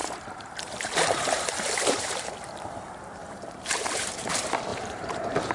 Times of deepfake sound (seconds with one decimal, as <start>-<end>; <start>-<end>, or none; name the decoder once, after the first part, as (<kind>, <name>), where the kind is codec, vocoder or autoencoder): 0.0-2.3 (vocoder, BigVGAN v2); 3.2-4.3; 4.7-5.5